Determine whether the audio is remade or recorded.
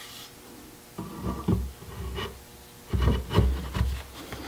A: recorded